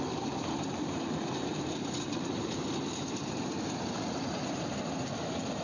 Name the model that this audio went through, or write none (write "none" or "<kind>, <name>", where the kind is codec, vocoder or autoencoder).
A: vocoder, BigVGAN v2